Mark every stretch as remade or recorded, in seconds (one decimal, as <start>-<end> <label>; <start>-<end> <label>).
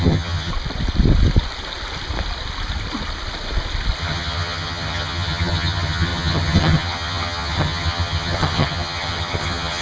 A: 0.0-0.5 remade; 0.5-4.0 recorded; 4.0-9.8 remade